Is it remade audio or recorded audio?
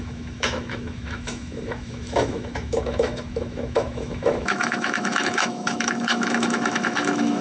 remade